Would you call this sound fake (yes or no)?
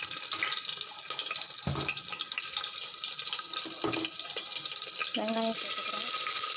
no